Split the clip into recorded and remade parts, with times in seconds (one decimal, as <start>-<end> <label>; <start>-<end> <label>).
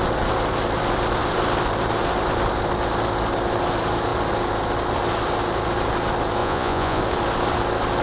0.0-6.4 recorded; 6.4-7.0 remade; 7.0-8.0 recorded